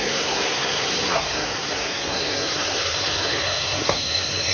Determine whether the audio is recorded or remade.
remade